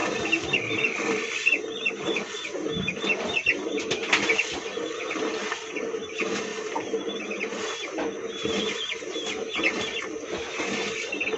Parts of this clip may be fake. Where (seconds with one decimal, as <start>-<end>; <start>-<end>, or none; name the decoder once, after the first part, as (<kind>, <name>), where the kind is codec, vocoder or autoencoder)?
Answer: none